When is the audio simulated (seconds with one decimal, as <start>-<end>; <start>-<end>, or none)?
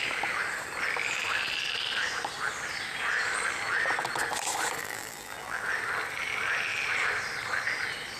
4.8-5.6